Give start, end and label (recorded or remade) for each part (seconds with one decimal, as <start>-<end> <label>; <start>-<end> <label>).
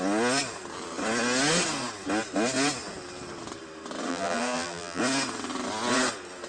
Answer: 0.0-4.1 recorded; 4.1-5.0 remade; 5.0-6.5 recorded